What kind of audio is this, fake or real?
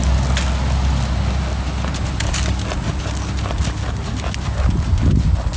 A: real